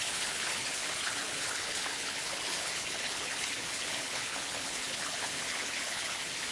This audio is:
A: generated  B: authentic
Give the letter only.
A